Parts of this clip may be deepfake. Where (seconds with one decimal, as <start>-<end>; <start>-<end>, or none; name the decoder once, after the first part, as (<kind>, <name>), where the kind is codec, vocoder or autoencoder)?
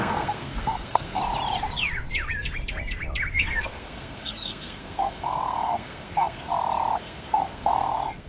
0.0-1.2 (codec, SNAC); 3.3-6.5; 7.0-8.3